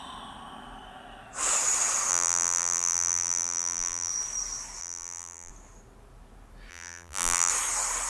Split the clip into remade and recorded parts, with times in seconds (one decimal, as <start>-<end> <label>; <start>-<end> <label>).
0.0-2.1 recorded; 2.1-4.1 remade; 4.1-4.8 recorded; 4.8-5.5 remade; 5.5-6.7 recorded; 6.7-7.5 remade; 7.5-8.1 recorded